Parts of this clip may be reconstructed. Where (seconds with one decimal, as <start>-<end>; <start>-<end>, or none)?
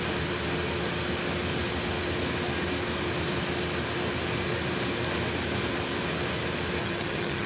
6.8-7.5